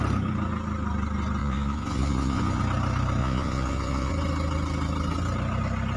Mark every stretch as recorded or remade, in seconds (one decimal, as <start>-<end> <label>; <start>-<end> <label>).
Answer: 0.0-1.4 recorded; 1.4-2.6 remade; 2.6-3.2 recorded; 3.2-4.1 remade; 4.1-6.0 recorded